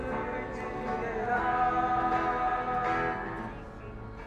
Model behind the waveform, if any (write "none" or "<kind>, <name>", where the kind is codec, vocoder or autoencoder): none